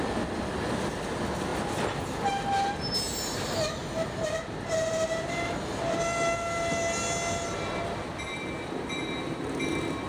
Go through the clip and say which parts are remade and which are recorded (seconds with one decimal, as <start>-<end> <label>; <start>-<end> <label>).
0.0-10.1 recorded